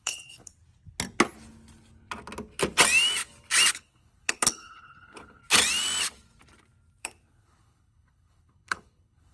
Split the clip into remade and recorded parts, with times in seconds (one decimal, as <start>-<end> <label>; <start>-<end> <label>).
0.0-0.5 remade; 0.5-3.7 recorded; 3.7-5.4 remade; 5.4-7.0 recorded; 7.0-9.3 remade